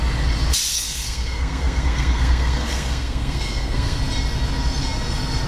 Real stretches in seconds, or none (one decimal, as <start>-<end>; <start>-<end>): 0.0-0.7; 4.0-5.5